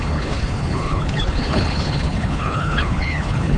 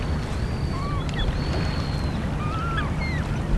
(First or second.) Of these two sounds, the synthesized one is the first